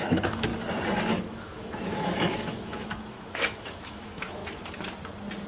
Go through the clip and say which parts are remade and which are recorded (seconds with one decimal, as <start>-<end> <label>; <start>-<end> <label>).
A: 0.0-0.5 remade; 0.5-1.3 recorded; 1.3-4.4 remade; 4.4-5.5 recorded